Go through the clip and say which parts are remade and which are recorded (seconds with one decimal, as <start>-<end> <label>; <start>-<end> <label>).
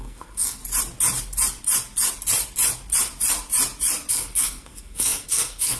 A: 0.0-0.6 remade; 0.6-4.1 recorded; 4.1-5.8 remade